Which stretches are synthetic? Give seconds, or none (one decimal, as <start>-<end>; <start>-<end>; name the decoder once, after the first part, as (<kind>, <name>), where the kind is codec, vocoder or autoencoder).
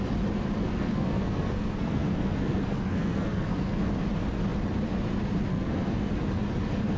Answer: 0.6-3.9 (codec, SNAC); 5.5-6.1